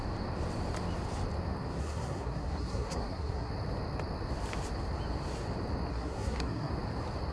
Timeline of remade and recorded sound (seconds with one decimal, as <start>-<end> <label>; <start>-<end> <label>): 0.0-1.8 recorded; 1.8-3.5 remade; 3.5-5.9 recorded; 5.9-6.7 remade; 6.7-7.3 recorded